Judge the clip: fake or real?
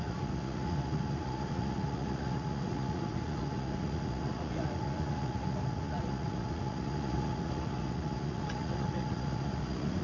fake